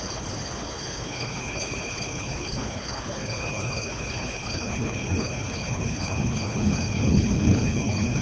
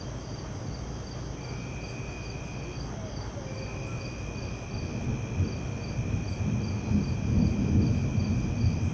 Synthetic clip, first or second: first